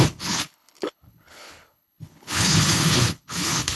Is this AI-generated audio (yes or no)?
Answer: yes